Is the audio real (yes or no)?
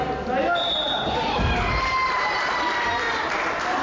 yes